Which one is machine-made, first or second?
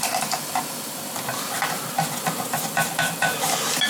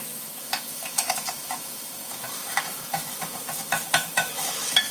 second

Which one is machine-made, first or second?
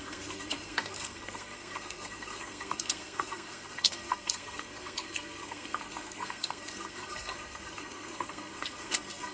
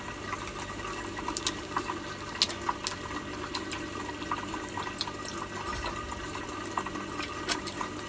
first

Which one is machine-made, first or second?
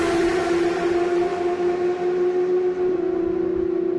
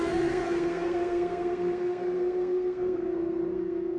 second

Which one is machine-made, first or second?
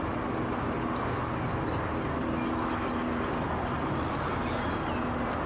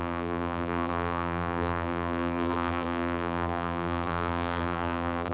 second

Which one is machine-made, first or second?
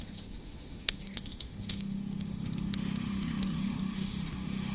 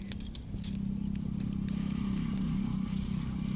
first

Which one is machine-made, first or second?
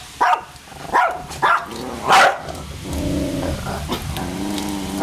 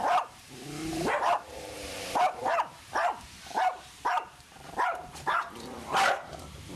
second